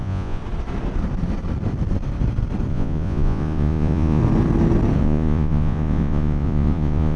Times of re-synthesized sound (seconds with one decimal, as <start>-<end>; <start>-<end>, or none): 0.0-0.4; 2.7-4.2; 5.0-7.2